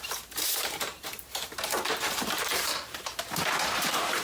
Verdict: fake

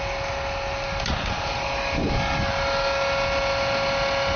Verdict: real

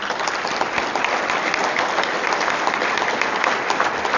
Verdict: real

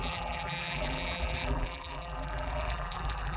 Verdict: fake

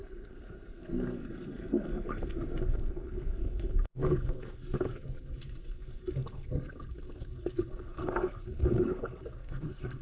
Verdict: fake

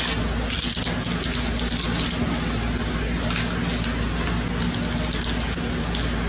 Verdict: real